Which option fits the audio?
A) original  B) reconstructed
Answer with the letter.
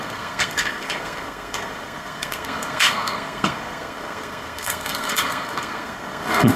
B